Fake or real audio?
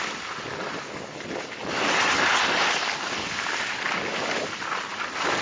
real